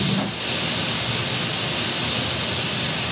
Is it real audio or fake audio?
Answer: real